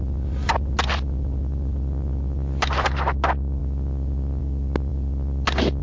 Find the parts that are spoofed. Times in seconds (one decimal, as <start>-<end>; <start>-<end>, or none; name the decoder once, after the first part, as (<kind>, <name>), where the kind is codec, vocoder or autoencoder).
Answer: none